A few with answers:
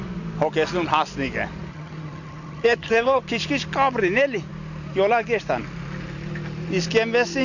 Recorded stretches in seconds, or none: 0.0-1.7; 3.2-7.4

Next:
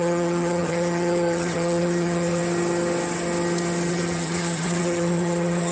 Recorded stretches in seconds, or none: 2.4-3.9

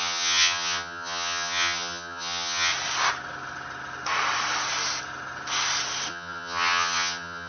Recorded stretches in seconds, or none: 2.7-6.1